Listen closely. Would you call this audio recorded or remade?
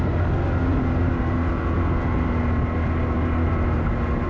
recorded